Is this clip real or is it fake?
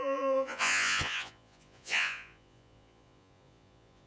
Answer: fake